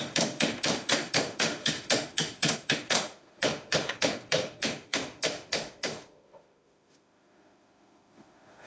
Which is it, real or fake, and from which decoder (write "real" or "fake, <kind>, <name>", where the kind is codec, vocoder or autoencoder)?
fake, autoencoder, DAC-VAE